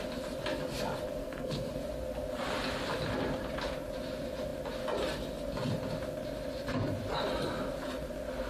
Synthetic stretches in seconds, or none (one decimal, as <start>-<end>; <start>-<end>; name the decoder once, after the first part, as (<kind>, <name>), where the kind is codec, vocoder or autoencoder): 1.2-1.7 (codec, SNAC)